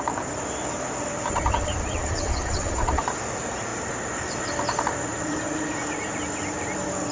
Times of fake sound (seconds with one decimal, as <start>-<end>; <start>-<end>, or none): 1.3-3.0